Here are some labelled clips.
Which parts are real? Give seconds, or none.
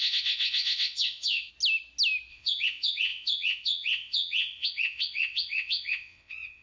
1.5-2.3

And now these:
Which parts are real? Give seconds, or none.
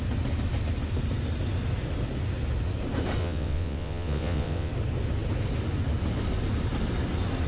0.0-3.2; 4.7-7.5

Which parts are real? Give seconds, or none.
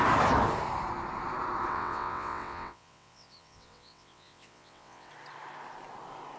0.0-1.7; 5.1-6.4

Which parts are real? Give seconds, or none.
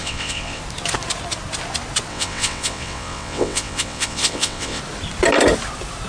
0.6-2.1; 4.8-6.1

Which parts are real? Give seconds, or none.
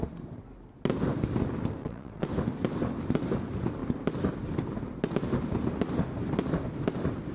0.0-1.8; 2.3-7.3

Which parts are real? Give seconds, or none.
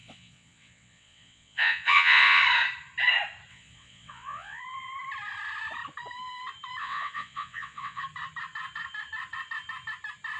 2.4-3.5; 4.6-6.8; 8.0-10.4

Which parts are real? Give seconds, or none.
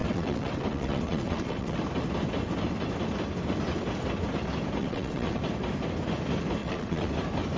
1.8-4.8; 5.4-6.6; 7.1-7.6